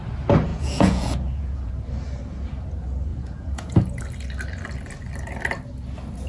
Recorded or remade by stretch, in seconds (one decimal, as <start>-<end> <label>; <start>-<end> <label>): 0.0-0.5 recorded; 0.5-1.7 remade; 1.7-3.1 recorded; 3.1-4.0 remade; 4.0-6.3 recorded